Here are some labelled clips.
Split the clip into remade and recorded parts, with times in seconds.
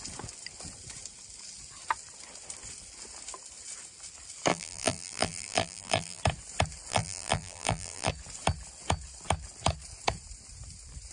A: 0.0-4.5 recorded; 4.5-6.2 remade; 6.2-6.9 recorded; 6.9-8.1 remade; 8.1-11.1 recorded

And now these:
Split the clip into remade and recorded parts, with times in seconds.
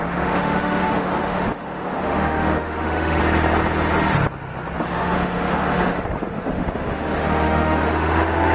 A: 0.0-3.2 remade; 3.2-4.8 recorded; 4.8-8.5 remade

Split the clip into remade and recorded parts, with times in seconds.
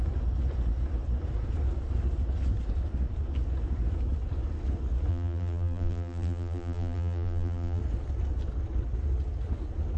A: 0.0-5.1 recorded; 5.1-7.8 remade; 7.8-10.0 recorded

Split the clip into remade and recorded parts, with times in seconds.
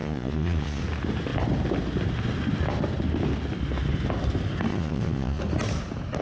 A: 0.0-0.8 remade; 0.8-4.7 recorded; 4.7-5.4 remade; 5.4-6.2 recorded